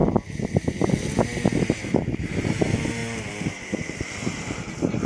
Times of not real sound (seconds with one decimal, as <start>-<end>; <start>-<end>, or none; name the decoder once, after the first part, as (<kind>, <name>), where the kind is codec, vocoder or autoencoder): 1.6-3.0 (vocoder, BigVGAN v2); 3.5-5.1